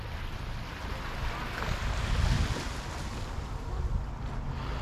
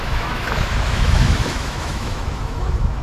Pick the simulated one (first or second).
second